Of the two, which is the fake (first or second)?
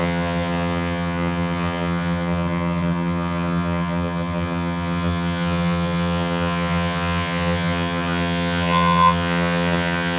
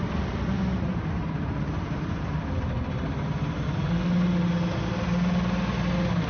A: first